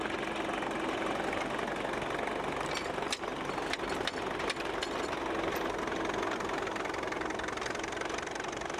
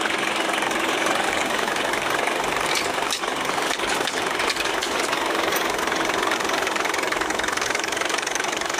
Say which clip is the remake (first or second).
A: second